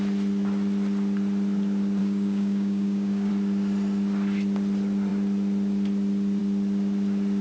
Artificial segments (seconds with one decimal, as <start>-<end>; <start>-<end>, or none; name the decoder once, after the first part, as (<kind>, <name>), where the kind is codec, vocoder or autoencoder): 2.0-3.3 (codec, DAC)

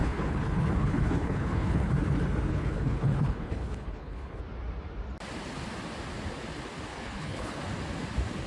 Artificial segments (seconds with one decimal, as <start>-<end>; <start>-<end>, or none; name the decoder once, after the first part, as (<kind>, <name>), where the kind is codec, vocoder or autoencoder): 0.0-1.9 (codec, HILCodec); 2.5-4.4; 6.9-7.6

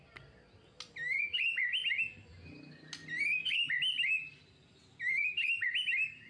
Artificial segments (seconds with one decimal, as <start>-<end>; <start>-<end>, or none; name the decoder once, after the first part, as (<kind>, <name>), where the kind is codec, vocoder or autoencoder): none

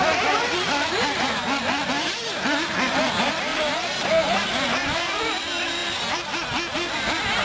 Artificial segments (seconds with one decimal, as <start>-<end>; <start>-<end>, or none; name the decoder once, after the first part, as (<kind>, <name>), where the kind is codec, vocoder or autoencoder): 3.5-5.2 (vocoder, BigVGAN v2)